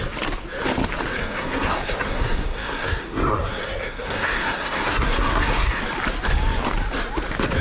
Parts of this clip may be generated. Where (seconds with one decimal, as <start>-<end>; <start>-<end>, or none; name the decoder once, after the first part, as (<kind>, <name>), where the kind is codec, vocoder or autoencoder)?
1.2-5.8 (codec, SNAC)